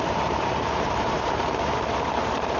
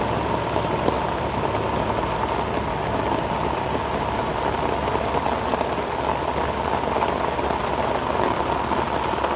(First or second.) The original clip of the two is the second